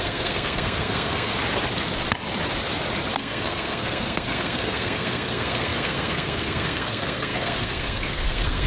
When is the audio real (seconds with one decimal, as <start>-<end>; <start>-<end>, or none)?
1.3-3.1